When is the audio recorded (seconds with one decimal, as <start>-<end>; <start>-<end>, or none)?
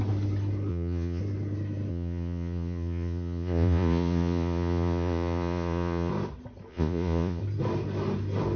0.0-0.7; 1.2-1.9; 6.1-6.7; 7.4-8.6